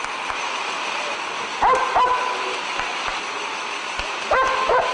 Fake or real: real